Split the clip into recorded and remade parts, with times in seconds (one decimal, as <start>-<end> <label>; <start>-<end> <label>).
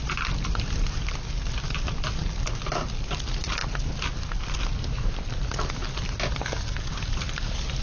0.0-7.8 recorded